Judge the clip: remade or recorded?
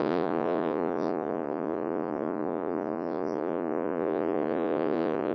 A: remade